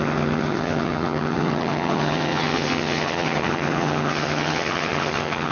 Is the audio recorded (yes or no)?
no